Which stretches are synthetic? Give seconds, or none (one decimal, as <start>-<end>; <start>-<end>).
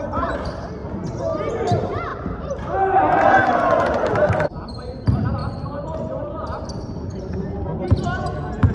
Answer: 0.0-0.8; 1.5-7.1